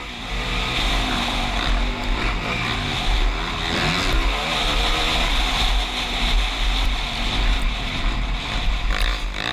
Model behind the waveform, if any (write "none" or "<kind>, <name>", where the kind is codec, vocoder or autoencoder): none